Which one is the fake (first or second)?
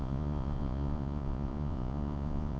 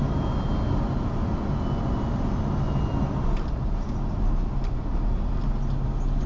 first